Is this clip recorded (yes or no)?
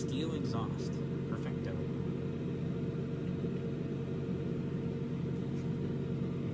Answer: yes